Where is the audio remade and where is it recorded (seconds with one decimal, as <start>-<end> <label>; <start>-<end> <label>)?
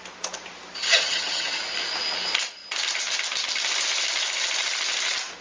0.0-0.8 recorded; 0.8-1.6 remade; 1.6-5.4 recorded